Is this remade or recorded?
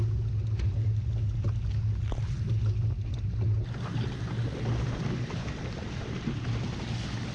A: recorded